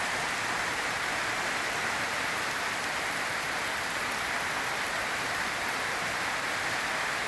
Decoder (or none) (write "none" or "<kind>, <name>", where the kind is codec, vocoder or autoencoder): none